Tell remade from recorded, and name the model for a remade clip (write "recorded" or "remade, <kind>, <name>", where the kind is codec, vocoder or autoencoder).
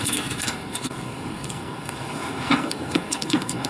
remade, codec, SNAC